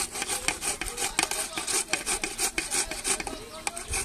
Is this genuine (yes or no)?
yes